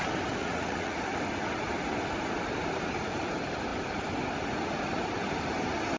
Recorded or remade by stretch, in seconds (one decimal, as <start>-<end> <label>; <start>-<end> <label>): 0.0-0.4 recorded; 0.4-1.0 remade; 1.0-6.0 recorded

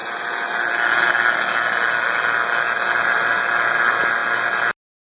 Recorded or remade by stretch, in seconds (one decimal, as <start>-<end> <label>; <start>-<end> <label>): 0.0-5.2 recorded

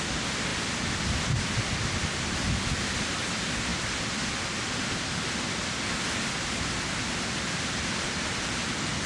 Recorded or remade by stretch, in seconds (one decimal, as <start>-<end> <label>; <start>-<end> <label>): 0.0-9.1 recorded

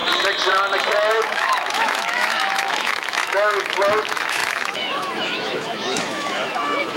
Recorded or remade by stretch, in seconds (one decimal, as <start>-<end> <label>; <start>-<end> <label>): 0.0-1.1 recorded; 1.1-7.0 remade